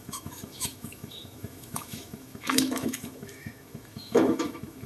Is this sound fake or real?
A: fake